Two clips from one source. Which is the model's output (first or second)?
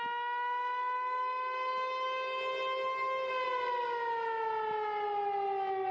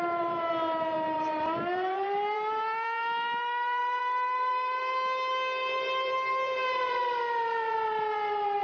second